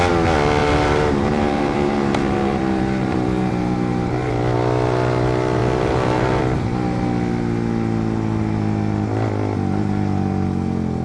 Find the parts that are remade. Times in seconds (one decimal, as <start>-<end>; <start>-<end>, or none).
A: 0.6-4.3; 5.6-6.4